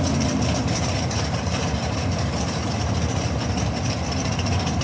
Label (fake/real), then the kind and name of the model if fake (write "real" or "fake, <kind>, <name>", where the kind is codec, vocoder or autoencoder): fake, vocoder, BigVGAN v2